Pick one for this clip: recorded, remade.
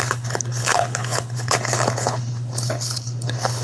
remade